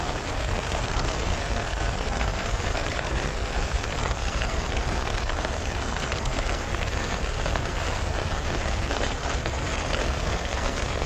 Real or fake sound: fake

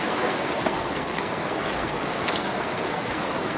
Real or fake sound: fake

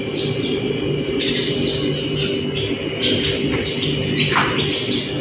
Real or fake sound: real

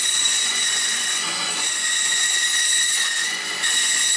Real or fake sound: fake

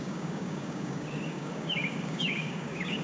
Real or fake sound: fake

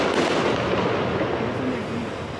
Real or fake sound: real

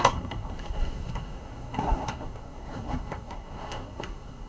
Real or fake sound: fake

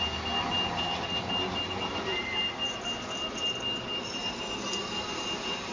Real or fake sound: real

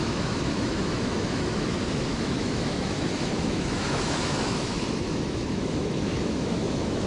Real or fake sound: fake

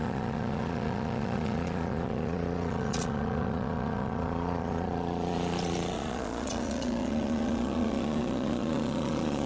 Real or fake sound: fake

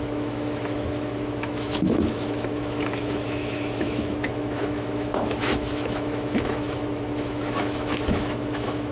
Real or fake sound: fake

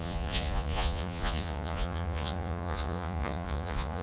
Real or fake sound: fake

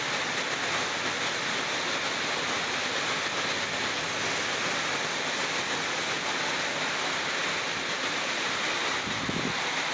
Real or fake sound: real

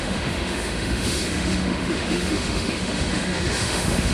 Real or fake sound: fake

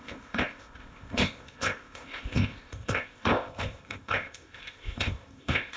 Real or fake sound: fake